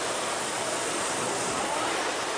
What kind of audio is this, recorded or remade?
remade